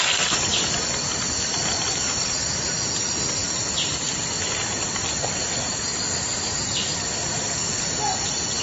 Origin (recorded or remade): recorded